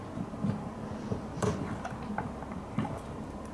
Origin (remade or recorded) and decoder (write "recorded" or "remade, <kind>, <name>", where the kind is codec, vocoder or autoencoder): remade, vocoder, BigVGAN v2